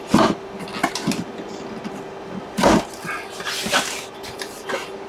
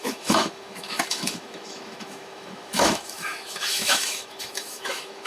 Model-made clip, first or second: second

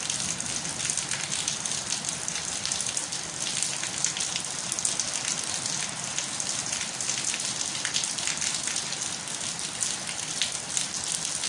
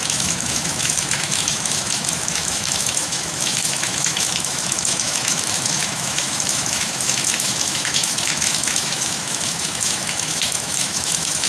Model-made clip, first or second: second